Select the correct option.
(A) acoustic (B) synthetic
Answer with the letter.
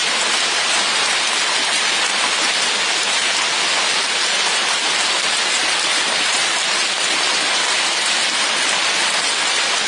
A